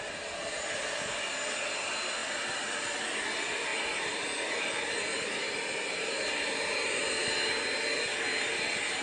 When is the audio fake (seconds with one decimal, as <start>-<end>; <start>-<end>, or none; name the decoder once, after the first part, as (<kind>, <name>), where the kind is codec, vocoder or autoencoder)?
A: 2.2-3.2 (vocoder, BigVGAN v2)